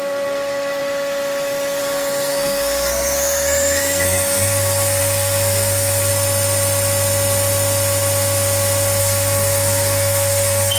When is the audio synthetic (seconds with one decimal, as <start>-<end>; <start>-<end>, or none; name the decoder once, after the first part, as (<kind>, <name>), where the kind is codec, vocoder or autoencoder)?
0.0-0.8 (codec, SNAC); 1.8-6.1; 9.0-10.8